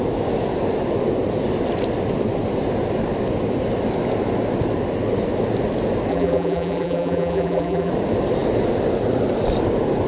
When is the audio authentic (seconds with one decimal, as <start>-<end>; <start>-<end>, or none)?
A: 0.0-6.1; 7.9-10.1